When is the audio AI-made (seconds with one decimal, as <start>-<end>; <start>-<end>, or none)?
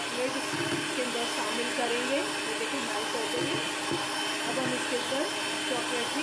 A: none